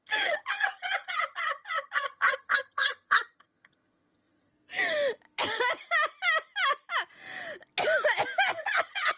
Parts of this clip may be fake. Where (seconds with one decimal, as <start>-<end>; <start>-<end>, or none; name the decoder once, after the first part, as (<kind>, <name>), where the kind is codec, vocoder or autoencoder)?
0.0-4.5 (vocoder, HiFi-GAN); 8.6-9.2